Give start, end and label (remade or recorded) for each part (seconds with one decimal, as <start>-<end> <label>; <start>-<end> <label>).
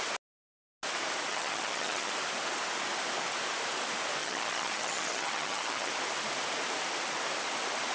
0.0-1.3 recorded; 1.3-2.1 remade; 2.1-4.2 recorded; 4.2-5.9 remade; 5.9-7.9 recorded